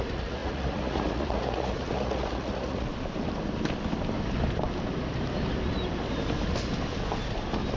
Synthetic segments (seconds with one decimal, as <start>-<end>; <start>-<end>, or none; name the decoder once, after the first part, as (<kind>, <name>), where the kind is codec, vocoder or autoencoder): 0.0-2.9 (vocoder, Vocos)

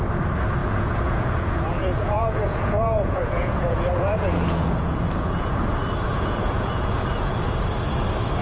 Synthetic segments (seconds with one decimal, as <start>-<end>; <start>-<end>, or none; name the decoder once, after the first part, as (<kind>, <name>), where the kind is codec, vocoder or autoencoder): 0.6-5.6 (vocoder, Vocos); 6.1-7.3

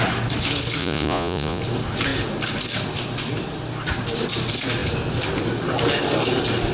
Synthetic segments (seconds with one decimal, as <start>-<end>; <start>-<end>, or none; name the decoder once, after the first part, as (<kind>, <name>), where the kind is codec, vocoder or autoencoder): 0.8-1.6 (vocoder, Vocos)